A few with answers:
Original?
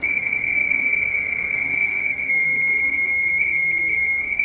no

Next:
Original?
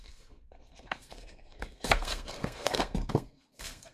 no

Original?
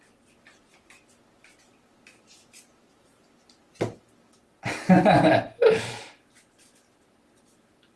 yes